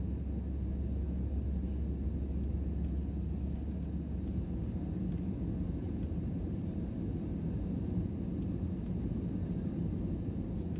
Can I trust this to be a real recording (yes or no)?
yes